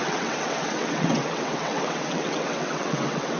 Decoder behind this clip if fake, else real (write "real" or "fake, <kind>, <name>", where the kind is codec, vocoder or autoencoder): fake, vocoder, WaveNeXt